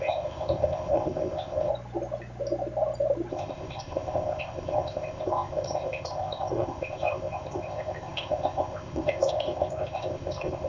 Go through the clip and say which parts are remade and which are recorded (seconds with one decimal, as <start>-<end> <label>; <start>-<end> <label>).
0.0-1.7 remade; 1.7-3.3 recorded; 3.3-10.7 remade